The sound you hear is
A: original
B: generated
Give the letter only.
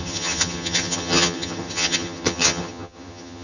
B